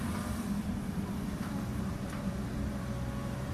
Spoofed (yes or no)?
yes